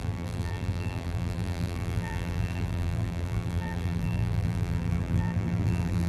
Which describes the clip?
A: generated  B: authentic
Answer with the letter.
A